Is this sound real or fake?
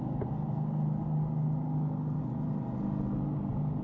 real